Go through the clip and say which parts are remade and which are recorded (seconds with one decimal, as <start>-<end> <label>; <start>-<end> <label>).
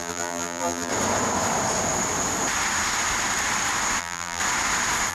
0.0-0.9 remade; 0.9-4.0 recorded; 4.0-4.4 remade; 4.4-5.1 recorded